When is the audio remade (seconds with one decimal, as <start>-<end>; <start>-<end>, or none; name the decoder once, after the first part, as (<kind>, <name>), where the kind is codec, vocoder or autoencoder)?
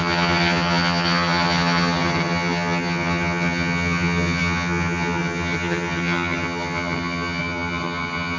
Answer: 0.0-8.4 (vocoder, HiFi-GAN)